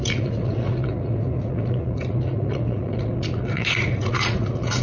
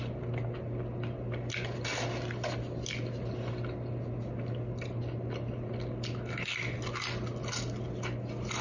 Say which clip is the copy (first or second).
first